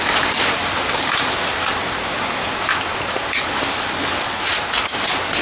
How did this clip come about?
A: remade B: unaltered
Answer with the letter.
B